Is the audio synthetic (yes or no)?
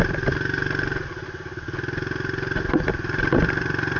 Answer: no